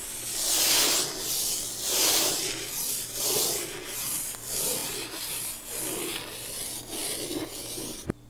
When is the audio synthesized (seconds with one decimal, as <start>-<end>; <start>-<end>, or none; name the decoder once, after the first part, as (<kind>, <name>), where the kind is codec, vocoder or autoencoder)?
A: 4.8-5.4 (vocoder, BigVGAN v2)